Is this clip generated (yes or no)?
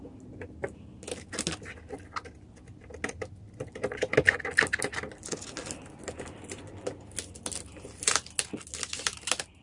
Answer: no